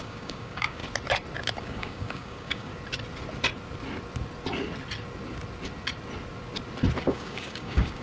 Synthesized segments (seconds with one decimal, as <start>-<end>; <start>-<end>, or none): 0.0-0.8; 1.6-2.7; 7.0-8.0